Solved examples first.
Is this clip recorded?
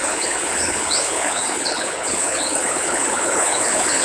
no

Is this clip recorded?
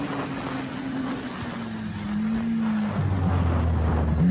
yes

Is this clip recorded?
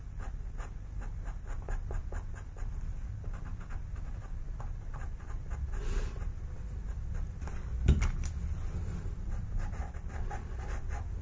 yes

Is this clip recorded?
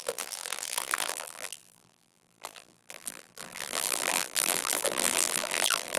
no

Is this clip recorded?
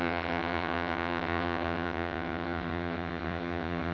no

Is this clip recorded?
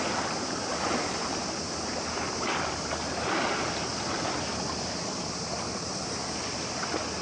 yes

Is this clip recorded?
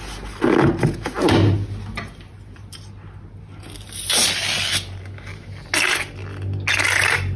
yes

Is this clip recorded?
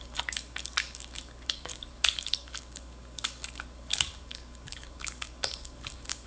no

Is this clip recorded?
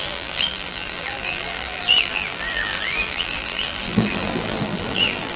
no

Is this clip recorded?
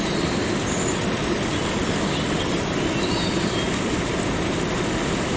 yes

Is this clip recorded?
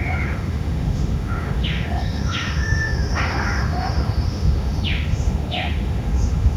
no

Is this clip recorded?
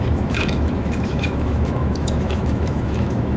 no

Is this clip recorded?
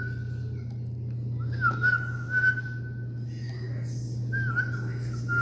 yes